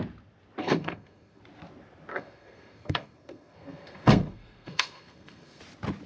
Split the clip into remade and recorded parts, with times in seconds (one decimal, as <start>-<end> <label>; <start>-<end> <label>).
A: 0.0-0.6 recorded; 0.6-1.4 remade; 1.4-2.1 recorded; 2.1-5.6 remade; 5.6-6.1 recorded